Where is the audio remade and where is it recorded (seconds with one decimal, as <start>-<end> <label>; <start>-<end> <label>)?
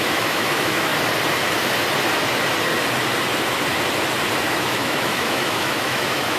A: 0.0-0.9 remade; 0.9-4.4 recorded; 4.4-6.4 remade